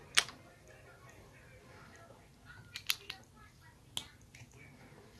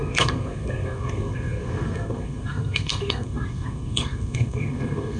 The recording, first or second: first